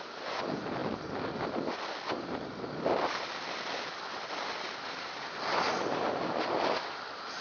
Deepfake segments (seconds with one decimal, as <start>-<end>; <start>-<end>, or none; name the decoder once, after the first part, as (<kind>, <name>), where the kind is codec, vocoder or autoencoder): none